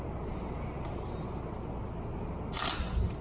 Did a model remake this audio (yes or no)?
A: no